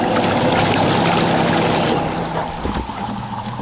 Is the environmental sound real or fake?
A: real